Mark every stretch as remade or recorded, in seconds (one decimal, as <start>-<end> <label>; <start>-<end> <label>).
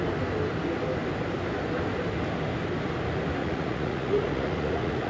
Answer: 0.0-3.4 recorded; 3.4-5.1 remade